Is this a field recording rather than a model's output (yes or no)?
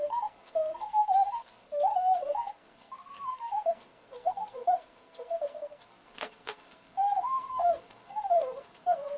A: no